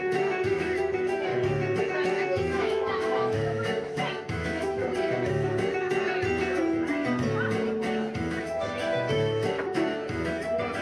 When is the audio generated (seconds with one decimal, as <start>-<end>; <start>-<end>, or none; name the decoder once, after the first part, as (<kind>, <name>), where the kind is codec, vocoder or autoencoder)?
0.0-1.3 (autoencoder, DAC-VAE); 1.8-4.8; 8.4-9.9

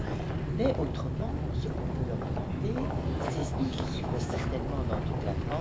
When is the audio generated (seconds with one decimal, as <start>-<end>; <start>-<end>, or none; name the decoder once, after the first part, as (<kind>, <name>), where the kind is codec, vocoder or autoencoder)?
3.4-4.5 (autoencoder, DAC-VAE)

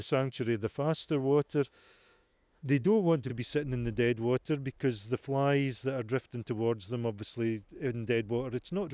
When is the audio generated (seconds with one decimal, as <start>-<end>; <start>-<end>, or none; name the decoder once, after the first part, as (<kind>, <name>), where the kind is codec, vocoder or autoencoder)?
0.0-3.3 (autoencoder, DAC-VAE)